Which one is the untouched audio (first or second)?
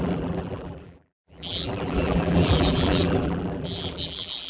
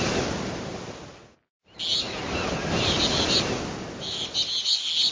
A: second